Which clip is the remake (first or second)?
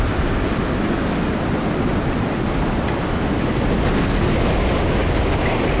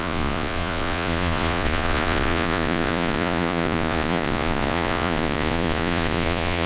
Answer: second